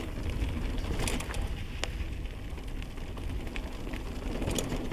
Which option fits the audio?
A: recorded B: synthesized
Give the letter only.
A